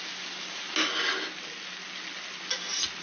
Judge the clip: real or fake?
real